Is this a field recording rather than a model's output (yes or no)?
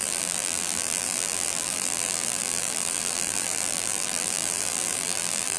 no